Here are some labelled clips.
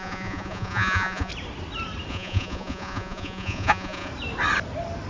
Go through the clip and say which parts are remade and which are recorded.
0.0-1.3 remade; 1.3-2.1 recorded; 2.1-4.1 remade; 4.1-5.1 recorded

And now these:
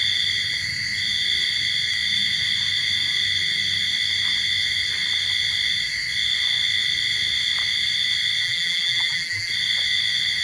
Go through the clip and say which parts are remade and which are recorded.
0.0-8.4 recorded; 8.4-9.5 remade; 9.5-10.4 recorded

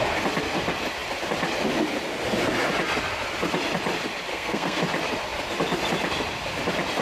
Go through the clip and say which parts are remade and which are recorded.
0.0-4.3 recorded; 4.3-4.8 remade; 4.8-7.0 recorded